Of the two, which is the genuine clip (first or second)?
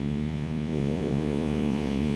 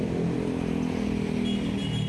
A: second